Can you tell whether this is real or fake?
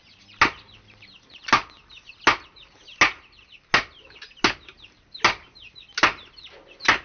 real